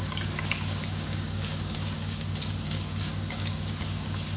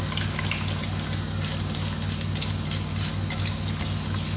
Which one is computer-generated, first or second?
first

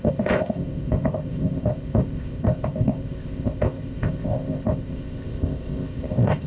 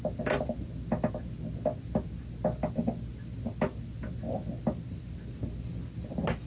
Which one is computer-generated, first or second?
first